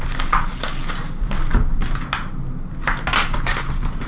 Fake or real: real